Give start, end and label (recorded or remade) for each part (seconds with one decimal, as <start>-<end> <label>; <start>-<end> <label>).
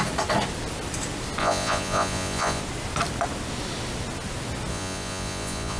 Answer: 0.0-1.4 recorded; 1.4-2.6 remade; 2.6-4.7 recorded; 4.7-5.8 remade